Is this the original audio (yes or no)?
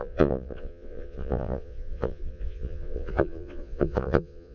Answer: no